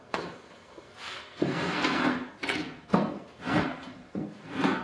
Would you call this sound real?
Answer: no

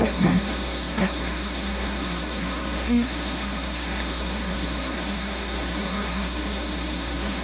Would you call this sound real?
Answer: no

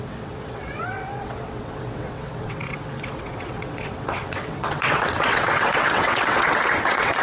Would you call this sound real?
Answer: no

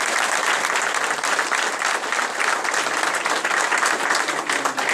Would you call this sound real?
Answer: yes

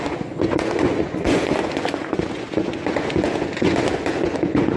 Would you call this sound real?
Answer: no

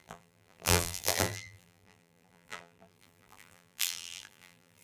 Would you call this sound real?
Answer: no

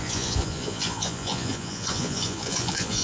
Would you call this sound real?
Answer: no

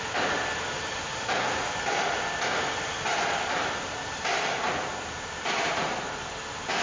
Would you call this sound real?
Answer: yes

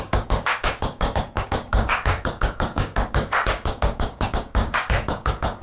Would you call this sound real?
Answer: no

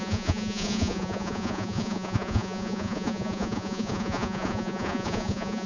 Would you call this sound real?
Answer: no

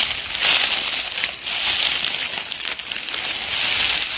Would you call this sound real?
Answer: yes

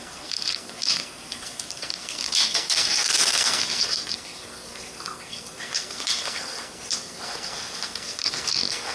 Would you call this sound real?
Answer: no